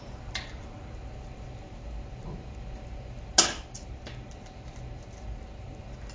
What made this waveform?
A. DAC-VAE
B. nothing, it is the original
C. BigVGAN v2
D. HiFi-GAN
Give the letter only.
B